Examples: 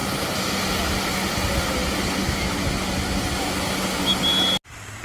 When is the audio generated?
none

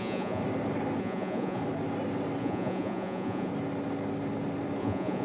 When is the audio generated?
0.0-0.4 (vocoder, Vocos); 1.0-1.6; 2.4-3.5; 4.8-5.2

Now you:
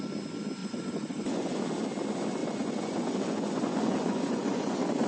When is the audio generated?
0.6-1.6 (vocoder, Vocos); 2.4-5.1

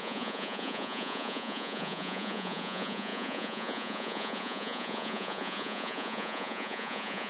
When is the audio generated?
0.0-7.3 (vocoder, Vocos)

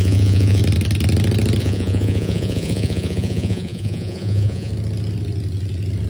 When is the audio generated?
0.0-0.6 (vocoder, Vocos); 1.6-4.7

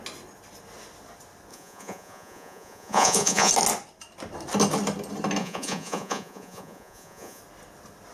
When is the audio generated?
1.5-3.5 (vocoder, Vocos); 5.4-7.4

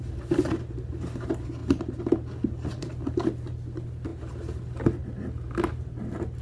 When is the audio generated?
none

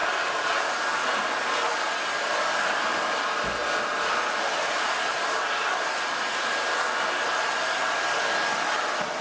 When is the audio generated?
none